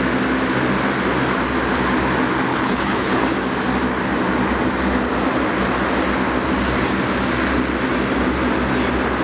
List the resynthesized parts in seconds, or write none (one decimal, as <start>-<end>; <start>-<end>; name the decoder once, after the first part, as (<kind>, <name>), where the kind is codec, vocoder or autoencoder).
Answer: 2.5-3.2 (codec, HILCodec)